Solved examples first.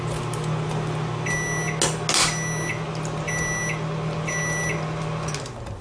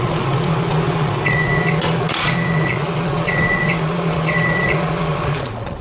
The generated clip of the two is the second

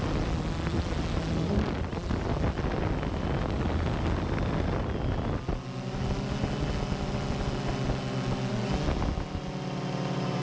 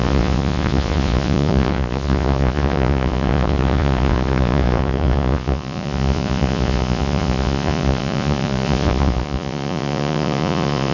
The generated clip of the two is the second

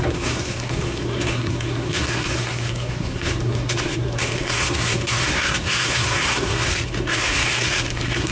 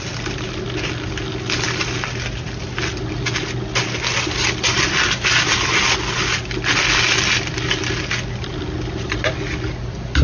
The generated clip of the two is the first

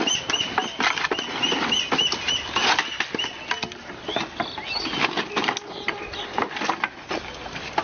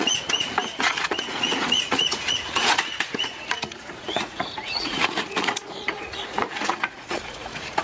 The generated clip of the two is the second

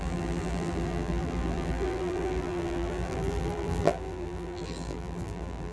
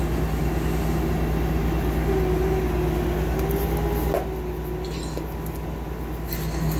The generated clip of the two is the first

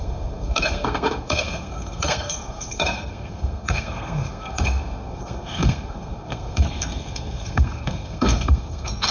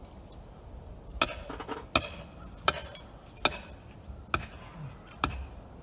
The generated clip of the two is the first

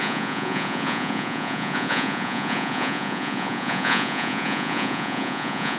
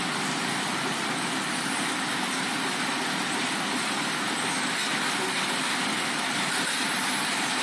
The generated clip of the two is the first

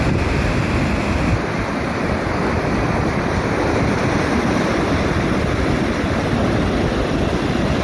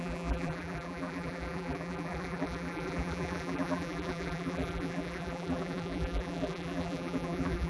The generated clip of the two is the second